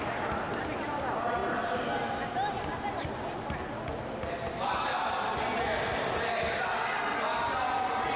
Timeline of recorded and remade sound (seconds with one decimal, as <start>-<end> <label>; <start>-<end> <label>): 0.0-8.2 recorded

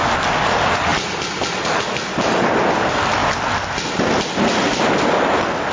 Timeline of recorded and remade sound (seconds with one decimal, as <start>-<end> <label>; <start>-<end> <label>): 0.0-5.7 recorded

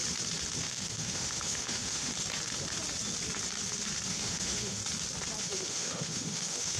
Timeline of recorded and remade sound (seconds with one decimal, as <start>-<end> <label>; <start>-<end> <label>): 0.0-0.6 recorded; 0.6-2.1 remade; 2.1-4.1 recorded; 4.1-4.8 remade; 4.8-5.4 recorded; 5.4-6.8 remade

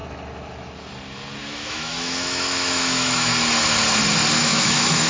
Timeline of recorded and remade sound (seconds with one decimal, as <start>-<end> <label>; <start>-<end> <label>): 0.0-1.4 recorded; 1.4-3.3 remade; 3.3-4.4 recorded; 4.4-5.1 remade

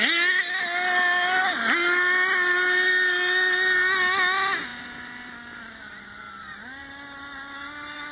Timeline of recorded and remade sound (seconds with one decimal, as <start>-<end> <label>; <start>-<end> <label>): 0.0-8.1 recorded

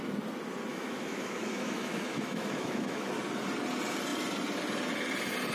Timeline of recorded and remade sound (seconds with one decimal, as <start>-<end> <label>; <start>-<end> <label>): 0.0-0.7 recorded; 0.7-3.1 remade; 3.1-5.5 recorded